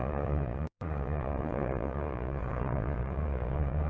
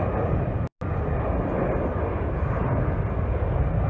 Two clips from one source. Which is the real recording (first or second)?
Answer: second